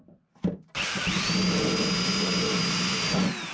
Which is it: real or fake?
real